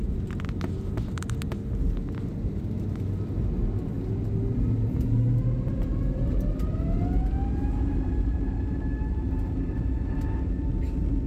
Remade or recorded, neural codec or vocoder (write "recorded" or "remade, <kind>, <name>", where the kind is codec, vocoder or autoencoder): recorded